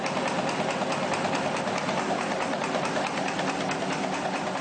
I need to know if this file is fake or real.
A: real